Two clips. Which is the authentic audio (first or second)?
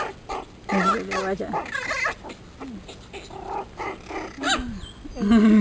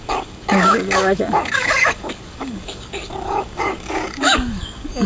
first